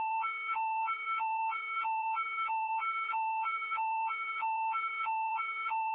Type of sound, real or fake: fake